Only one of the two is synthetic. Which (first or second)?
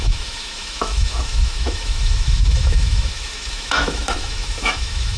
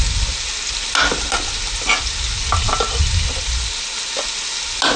first